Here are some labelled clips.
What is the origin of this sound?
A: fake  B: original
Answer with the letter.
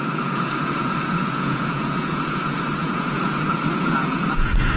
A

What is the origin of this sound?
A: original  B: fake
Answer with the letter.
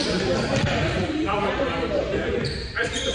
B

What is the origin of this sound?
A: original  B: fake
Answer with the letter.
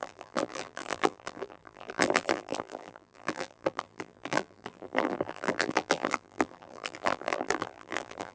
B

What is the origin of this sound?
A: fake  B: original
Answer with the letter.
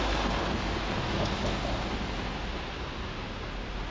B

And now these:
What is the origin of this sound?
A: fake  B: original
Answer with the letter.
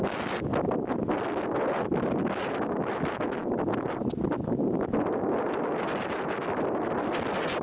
B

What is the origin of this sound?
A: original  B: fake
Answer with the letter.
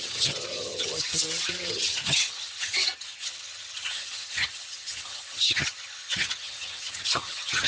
B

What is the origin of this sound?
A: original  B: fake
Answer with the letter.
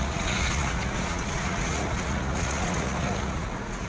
B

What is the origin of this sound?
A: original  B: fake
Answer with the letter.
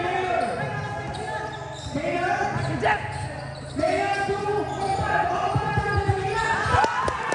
A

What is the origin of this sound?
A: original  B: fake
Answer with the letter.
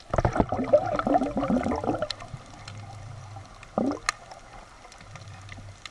A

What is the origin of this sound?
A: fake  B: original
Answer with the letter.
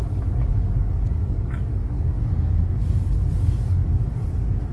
A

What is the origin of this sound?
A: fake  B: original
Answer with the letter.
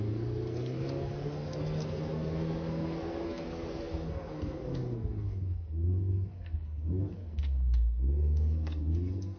A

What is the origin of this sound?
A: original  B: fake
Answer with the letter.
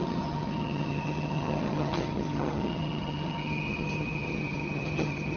B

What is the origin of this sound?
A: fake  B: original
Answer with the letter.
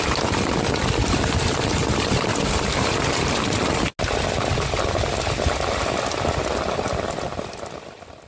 B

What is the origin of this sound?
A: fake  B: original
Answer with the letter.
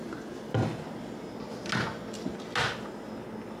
B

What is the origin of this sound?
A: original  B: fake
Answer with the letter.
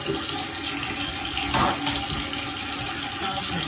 A